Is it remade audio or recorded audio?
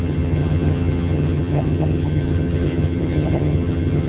remade